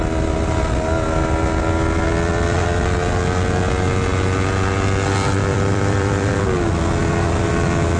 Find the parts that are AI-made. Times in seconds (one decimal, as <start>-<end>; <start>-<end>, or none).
5.5-6.4; 7.0-7.5